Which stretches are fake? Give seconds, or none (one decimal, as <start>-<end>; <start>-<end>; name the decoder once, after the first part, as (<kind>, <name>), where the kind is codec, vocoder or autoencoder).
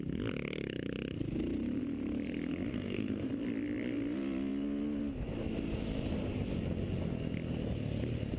2.7-3.3 (codec, SNAC)